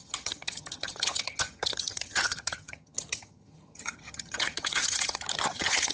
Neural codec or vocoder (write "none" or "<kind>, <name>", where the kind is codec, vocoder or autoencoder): vocoder, HiFi-GAN